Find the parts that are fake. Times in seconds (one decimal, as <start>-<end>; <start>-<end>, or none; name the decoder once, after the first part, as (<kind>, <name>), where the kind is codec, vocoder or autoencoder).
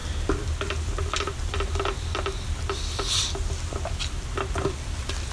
none